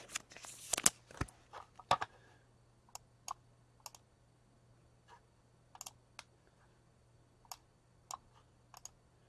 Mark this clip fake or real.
real